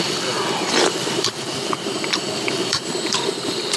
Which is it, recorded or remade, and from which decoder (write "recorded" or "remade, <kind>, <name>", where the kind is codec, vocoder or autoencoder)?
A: remade, vocoder, BigVGAN v2